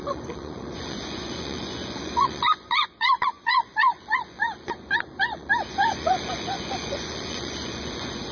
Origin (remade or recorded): remade